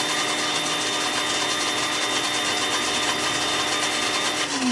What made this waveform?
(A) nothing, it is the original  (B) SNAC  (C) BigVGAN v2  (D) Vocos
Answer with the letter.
A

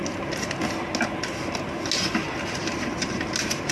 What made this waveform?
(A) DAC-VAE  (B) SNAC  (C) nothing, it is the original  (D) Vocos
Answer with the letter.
C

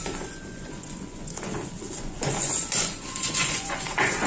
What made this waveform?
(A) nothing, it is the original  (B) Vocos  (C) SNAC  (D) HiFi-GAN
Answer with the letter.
B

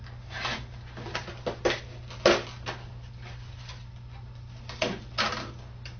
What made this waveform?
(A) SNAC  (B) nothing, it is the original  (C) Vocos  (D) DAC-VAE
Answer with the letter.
B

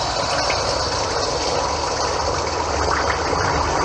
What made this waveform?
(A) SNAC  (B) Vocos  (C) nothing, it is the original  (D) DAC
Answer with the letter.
C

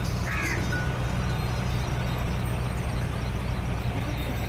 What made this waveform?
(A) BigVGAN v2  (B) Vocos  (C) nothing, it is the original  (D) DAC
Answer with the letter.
C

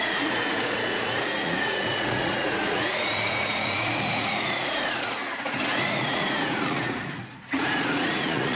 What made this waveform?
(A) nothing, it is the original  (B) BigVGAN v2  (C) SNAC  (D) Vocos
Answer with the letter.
D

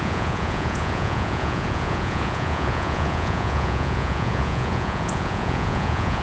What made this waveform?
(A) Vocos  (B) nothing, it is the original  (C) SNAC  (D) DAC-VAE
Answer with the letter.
A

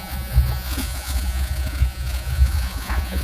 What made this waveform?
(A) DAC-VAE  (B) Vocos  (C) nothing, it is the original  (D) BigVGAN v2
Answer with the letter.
B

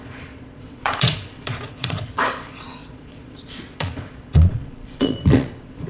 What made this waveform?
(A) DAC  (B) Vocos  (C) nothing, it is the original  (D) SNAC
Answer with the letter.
B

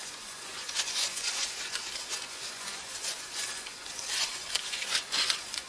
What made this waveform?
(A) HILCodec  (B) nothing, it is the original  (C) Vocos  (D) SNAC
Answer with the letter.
C